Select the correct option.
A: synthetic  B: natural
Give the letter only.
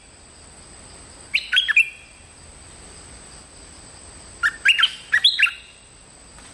B